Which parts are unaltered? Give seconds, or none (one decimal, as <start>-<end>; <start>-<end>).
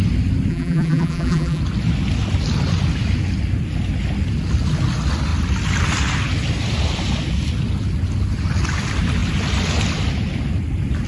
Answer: 0.0-0.5; 1.6-11.1